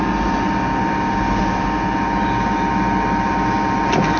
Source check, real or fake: real